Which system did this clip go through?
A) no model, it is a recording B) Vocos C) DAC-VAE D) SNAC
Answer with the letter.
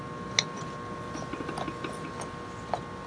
A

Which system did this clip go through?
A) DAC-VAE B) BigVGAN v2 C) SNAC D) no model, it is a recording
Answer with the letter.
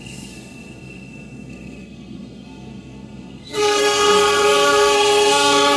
C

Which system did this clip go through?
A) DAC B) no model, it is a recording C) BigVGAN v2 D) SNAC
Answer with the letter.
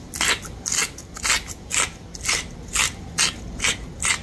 B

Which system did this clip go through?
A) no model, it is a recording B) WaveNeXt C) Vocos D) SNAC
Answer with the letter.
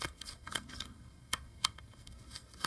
D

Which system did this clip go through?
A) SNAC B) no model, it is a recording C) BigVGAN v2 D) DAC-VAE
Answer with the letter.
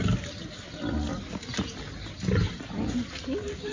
B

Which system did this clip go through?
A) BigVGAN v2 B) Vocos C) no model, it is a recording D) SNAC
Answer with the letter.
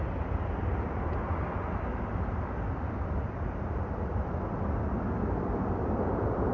C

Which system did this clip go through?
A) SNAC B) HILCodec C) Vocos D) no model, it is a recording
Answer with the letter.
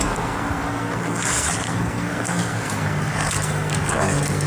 A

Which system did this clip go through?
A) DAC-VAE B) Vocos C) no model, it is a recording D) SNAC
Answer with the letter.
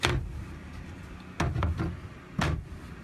C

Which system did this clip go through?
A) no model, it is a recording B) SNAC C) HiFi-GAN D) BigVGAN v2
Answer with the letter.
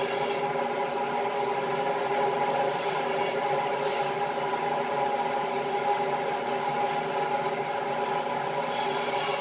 A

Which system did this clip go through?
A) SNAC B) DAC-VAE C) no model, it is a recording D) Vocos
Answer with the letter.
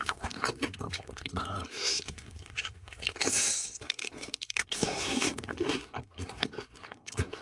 A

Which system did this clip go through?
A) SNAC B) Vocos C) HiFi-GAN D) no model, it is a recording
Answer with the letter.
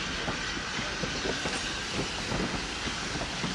D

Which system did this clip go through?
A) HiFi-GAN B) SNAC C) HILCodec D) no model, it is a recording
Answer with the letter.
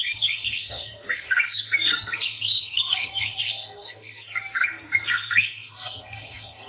B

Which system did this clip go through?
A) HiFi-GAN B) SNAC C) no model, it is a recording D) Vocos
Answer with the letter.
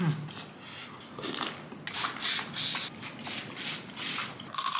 C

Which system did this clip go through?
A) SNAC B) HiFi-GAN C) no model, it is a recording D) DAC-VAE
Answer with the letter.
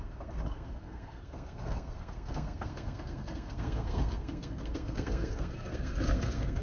A